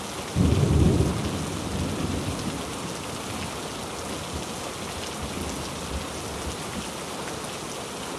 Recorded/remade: recorded